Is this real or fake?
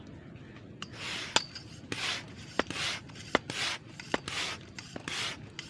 real